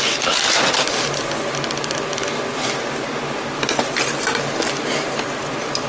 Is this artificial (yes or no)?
no